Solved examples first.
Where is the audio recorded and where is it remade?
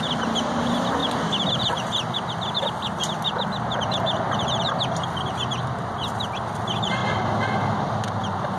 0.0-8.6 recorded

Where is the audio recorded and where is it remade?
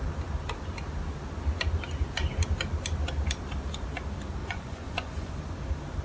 0.0-4.4 recorded; 4.4-5.3 remade; 5.3-6.0 recorded